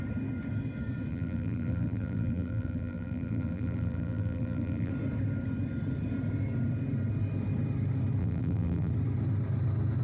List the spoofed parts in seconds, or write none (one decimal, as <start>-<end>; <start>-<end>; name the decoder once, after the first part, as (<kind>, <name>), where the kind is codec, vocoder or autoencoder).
1.1-4.9 (vocoder, BigVGAN v2); 8.2-8.9